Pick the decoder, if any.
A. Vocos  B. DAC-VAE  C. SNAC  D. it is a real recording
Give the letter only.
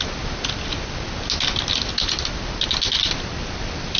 D